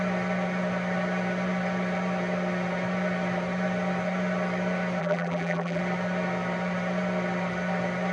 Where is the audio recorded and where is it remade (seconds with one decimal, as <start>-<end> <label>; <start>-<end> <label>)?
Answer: 0.0-5.0 recorded; 5.0-5.8 remade; 5.8-8.1 recorded